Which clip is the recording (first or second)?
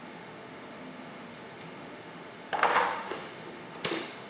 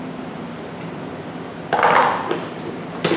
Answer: second